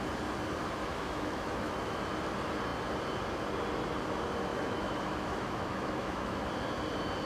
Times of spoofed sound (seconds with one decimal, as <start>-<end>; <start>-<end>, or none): 0.9-2.0; 4.5-6.5